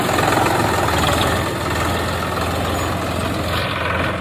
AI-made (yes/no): no